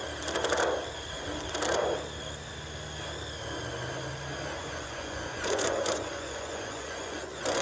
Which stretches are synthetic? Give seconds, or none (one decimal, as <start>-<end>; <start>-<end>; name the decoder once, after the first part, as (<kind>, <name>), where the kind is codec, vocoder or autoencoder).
4.6-7.6 (vocoder, Vocos)